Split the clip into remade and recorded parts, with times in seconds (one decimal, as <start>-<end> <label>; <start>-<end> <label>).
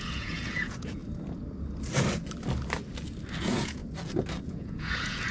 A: 0.0-1.0 remade; 1.0-3.4 recorded; 3.4-3.8 remade; 3.8-4.4 recorded; 4.4-5.3 remade